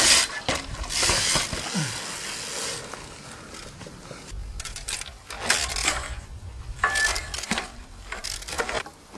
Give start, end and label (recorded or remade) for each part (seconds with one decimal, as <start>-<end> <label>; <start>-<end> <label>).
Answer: 0.0-5.8 recorded; 5.8-6.6 remade; 6.6-9.2 recorded